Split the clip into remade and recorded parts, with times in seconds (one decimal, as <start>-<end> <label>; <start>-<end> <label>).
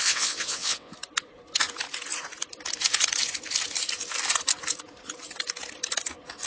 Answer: 0.0-0.9 remade; 0.9-6.5 recorded